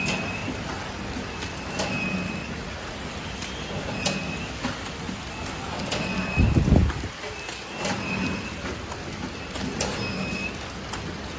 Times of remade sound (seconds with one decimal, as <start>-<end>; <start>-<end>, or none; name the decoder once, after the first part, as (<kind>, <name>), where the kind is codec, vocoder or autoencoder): 2.4-3.1 (vocoder, Vocos)